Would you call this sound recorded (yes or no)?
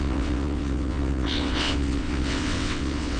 no